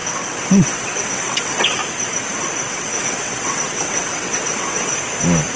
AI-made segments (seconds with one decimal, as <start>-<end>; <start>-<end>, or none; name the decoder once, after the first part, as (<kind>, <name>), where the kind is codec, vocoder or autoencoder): 0.0-1.8 (vocoder, WaveNeXt); 2.7-4.9